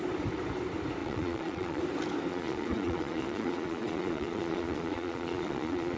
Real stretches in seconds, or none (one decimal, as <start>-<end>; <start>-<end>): 0.0-1.0; 1.8-2.3